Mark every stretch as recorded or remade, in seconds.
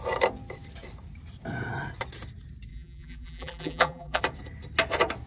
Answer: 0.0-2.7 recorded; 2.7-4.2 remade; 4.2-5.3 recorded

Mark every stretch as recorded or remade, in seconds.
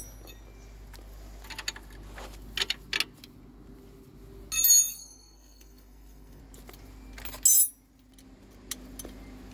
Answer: 0.0-4.9 recorded; 4.9-6.4 remade; 6.4-9.5 recorded